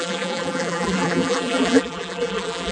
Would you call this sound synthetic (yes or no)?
yes